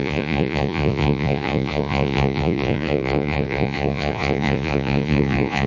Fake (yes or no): yes